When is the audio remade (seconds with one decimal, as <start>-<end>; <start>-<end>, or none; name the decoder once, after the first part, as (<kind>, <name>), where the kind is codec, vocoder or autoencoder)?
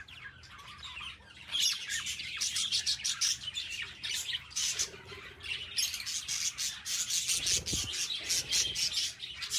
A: 1.0-5.3 (vocoder, BigVGAN v2)